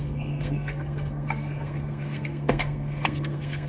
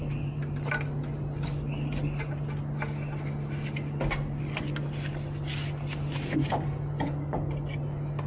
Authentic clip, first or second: second